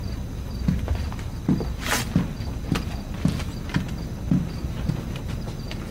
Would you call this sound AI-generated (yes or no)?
no